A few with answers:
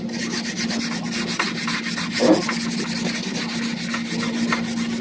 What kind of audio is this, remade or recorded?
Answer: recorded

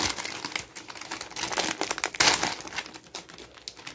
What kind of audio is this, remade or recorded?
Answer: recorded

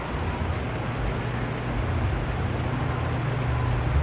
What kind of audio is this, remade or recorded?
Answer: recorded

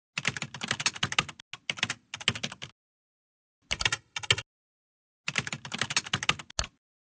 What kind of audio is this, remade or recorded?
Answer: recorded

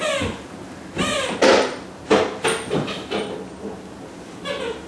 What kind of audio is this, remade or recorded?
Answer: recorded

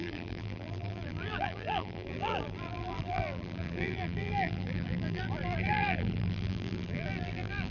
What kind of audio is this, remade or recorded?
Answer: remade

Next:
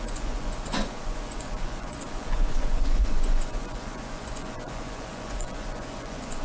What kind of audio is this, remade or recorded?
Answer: remade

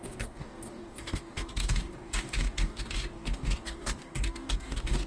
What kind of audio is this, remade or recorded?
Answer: remade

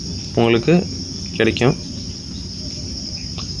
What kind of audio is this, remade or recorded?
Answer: recorded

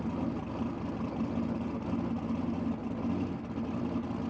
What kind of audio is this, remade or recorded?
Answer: recorded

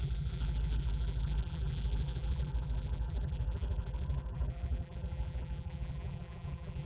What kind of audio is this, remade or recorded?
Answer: remade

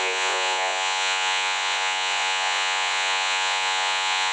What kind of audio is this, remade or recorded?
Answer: remade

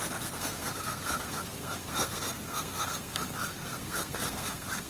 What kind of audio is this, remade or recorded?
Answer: remade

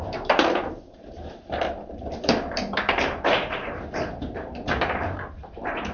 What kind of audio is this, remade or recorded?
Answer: remade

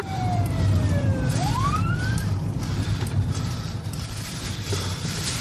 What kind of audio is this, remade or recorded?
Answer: remade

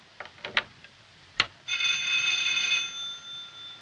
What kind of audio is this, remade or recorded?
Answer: recorded